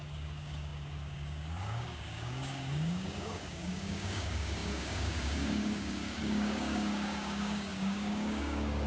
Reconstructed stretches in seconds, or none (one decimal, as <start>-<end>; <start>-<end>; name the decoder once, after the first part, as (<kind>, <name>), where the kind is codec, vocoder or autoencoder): 0.0-8.9 (codec, DAC)